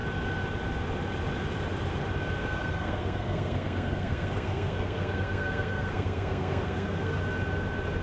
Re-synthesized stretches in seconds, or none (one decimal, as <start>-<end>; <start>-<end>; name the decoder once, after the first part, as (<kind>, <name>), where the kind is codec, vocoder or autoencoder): 2.4-7.2 (codec, SNAC)